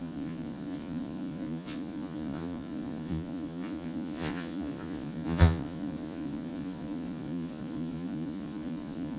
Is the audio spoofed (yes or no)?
yes